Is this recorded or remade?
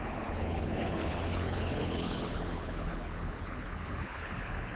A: remade